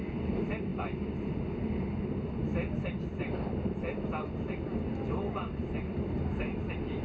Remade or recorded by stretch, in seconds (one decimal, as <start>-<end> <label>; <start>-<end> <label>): 0.0-7.0 recorded